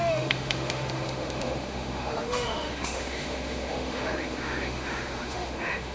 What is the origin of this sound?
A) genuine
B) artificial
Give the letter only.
B